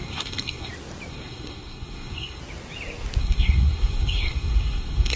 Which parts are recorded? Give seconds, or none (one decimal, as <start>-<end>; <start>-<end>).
0.7-1.1; 2.4-3.2